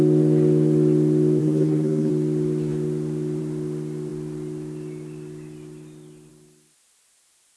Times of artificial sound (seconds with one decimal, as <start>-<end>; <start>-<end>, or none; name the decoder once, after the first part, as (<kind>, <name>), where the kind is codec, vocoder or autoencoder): 1.4-2.1 (codec, SNAC)